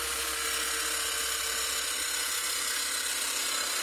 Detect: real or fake real